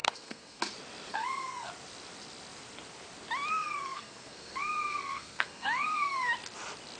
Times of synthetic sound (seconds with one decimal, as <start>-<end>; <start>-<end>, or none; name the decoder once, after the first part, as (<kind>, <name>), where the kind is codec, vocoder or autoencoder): 0.0-0.6 (codec, SNAC); 1.1-1.7; 3.5-6.3